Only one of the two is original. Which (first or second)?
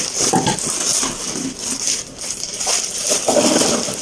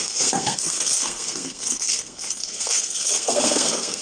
first